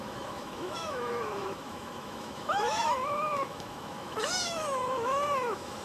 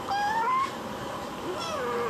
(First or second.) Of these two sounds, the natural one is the second